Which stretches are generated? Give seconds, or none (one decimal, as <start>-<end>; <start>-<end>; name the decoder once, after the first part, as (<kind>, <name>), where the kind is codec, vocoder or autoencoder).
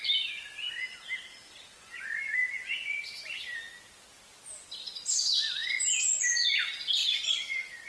1.7-3.4 (vocoder, Vocos); 5.6-6.6; 7.0-7.9